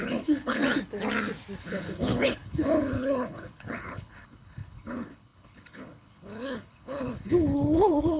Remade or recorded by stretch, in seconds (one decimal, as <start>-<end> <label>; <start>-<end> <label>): 0.0-0.6 remade; 0.6-1.6 recorded; 1.6-8.2 remade